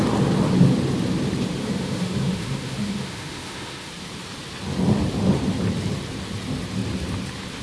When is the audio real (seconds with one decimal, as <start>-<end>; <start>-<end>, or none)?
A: 0.0-1.6; 3.9-7.6